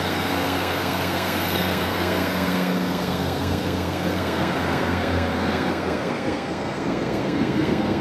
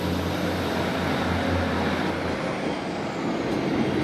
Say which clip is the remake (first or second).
first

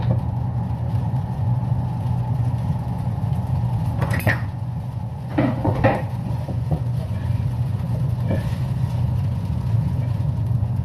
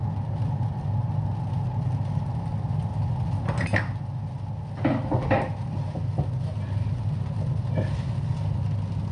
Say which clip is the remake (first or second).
first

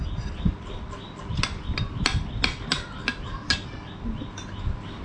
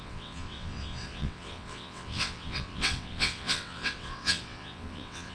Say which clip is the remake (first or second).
second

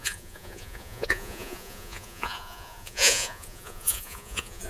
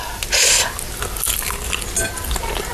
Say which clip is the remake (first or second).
first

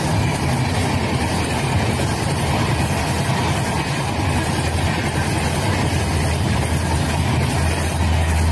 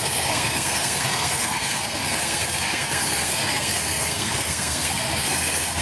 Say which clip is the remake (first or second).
second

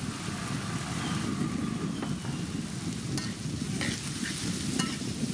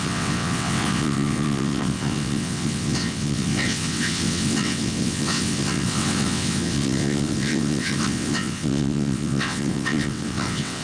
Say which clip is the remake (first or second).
second